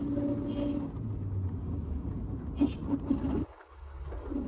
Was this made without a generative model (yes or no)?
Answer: yes